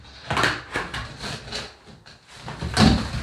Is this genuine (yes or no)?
yes